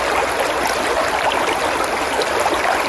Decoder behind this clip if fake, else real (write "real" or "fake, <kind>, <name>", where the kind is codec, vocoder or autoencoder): real